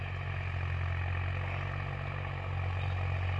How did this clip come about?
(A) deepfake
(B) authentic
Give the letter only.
B